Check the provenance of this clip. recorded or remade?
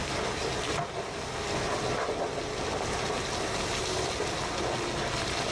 recorded